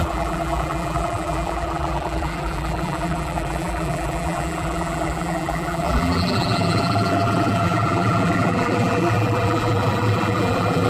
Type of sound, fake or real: fake